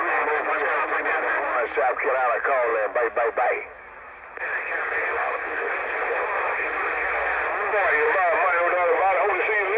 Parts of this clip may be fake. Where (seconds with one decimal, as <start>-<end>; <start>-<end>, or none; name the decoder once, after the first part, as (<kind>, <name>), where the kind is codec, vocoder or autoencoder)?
none